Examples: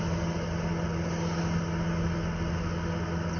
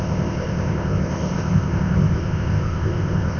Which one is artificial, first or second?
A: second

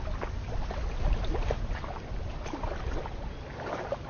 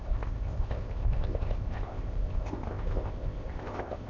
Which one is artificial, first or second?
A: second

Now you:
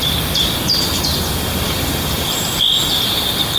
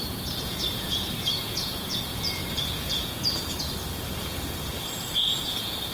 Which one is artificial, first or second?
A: second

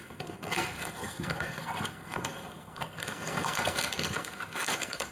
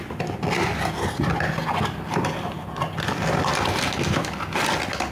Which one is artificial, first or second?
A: first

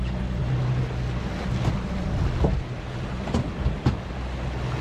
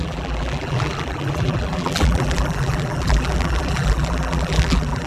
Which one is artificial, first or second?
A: second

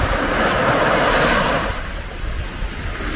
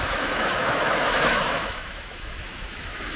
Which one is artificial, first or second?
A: second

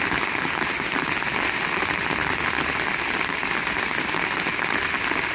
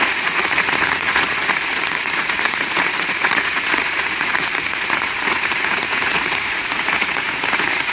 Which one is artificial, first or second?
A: second